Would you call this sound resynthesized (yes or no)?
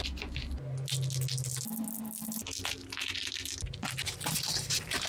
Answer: no